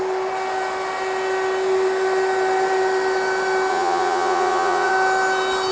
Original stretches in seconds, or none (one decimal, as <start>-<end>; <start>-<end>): 0.0-3.7; 4.9-5.7